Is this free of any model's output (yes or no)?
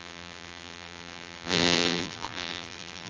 no